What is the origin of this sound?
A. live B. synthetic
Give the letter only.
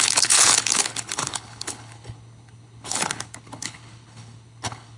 B